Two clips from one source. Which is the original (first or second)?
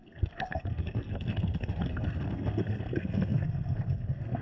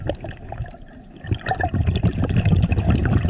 second